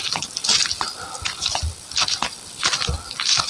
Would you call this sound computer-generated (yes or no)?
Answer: no